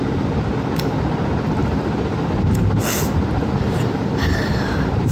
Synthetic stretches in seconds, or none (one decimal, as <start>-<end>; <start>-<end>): 1.6-2.8; 3.4-5.1